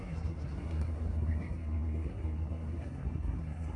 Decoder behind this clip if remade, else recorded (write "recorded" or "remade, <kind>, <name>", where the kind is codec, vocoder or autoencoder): remade, codec, SNAC